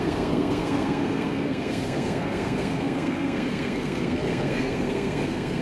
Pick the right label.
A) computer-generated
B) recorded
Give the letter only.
A